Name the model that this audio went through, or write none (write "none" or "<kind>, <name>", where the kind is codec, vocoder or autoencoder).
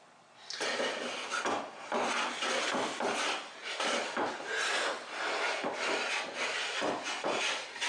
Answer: none